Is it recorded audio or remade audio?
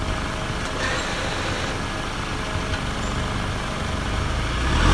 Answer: recorded